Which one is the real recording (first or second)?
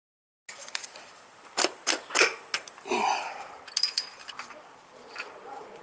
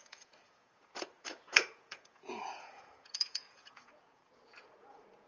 first